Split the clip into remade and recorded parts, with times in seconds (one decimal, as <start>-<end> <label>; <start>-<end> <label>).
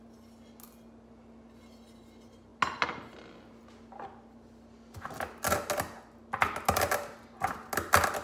0.0-8.2 recorded